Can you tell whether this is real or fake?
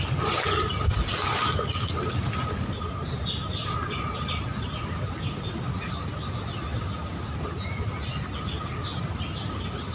real